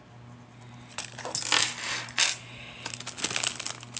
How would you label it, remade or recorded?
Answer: recorded